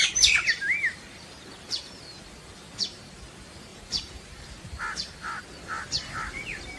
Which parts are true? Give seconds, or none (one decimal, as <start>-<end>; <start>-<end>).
0.0-3.7; 4.5-6.8